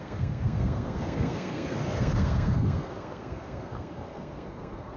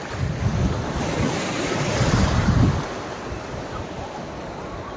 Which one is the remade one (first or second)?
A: first